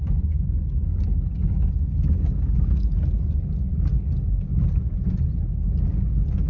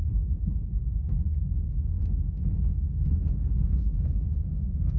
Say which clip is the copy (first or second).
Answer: second